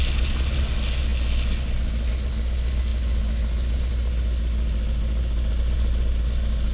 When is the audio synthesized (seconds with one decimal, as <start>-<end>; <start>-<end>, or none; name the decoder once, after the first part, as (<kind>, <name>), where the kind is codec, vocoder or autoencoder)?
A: none